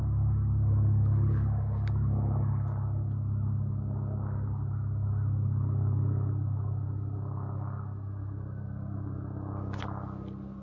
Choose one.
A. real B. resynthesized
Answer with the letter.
A